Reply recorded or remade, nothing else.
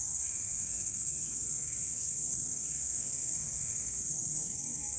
remade